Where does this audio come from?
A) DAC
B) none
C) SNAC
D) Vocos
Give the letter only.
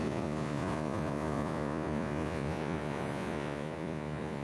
D